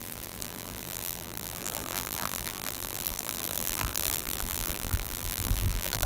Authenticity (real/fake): fake